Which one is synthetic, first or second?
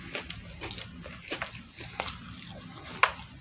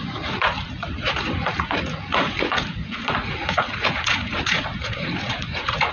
second